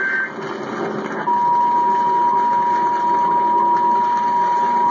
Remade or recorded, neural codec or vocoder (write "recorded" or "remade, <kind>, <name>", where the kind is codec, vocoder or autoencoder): recorded